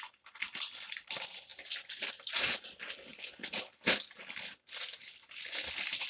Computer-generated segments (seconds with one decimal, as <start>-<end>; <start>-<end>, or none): none